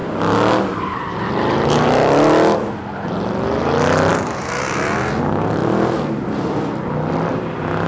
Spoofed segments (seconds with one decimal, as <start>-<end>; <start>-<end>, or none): none